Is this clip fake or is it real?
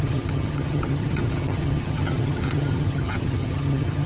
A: fake